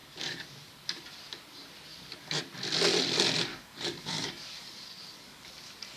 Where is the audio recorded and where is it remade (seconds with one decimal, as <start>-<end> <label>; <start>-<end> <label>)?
0.0-0.7 remade; 0.7-1.9 recorded; 1.9-2.4 remade; 2.4-3.5 recorded; 3.5-5.5 remade; 5.5-6.0 recorded